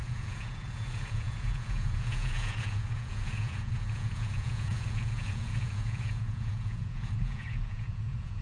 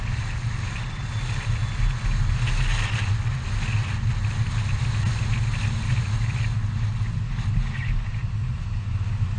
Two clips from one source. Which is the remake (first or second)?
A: first